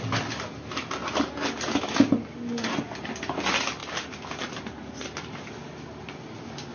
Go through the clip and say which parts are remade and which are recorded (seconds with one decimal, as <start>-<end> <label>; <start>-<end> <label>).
0.0-6.7 recorded